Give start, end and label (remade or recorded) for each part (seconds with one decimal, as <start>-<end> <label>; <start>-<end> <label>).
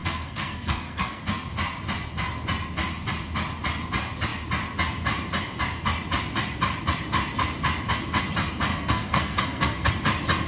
0.0-1.2 remade; 1.2-8.7 recorded; 8.7-9.9 remade; 9.9-10.5 recorded